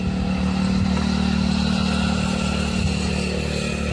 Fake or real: real